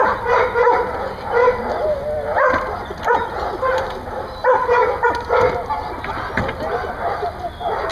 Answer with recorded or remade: recorded